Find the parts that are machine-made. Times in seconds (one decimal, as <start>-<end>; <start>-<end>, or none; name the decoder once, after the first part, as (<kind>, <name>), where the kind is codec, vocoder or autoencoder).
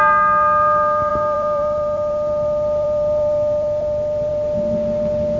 1.1-4.3 (vocoder, BigVGAN v2)